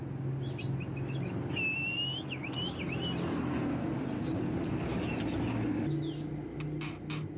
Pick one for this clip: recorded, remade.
recorded